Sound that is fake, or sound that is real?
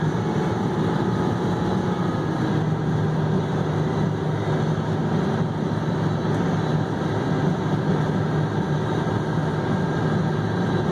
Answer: real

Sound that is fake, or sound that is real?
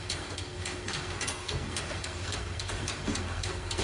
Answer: fake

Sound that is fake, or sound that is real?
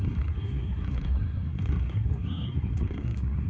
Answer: fake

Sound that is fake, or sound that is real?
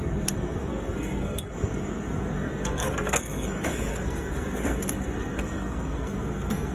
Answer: fake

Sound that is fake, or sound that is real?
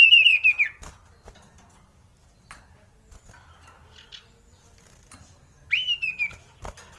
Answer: real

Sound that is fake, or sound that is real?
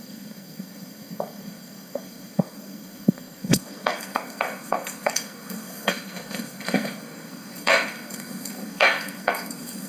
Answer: fake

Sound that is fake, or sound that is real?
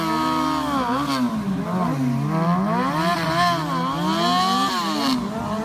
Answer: real